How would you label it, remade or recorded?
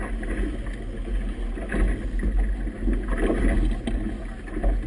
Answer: recorded